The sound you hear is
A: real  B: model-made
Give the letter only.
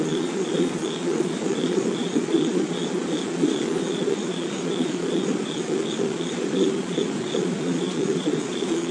B